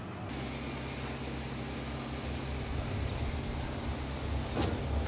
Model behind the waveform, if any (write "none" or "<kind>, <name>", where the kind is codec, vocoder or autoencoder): none